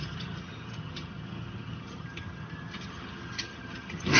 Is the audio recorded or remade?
remade